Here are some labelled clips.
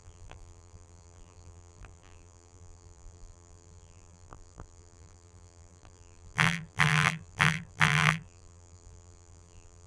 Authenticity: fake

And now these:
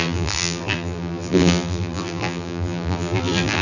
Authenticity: fake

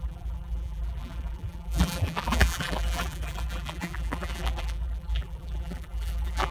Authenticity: fake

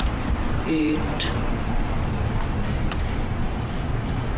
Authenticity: fake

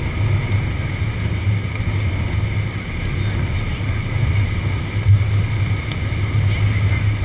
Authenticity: real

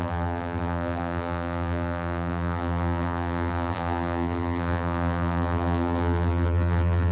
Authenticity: fake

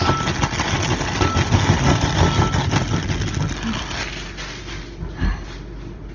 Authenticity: real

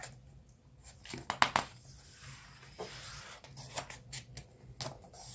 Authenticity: real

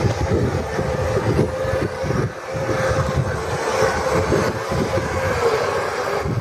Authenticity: real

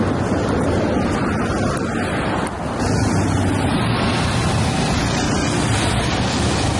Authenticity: real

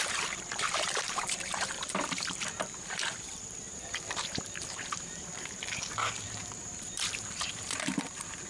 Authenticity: fake